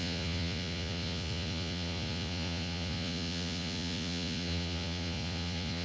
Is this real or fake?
fake